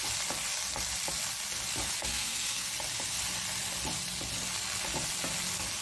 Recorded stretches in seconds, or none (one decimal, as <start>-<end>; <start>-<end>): 0.0-2.0; 2.7-5.8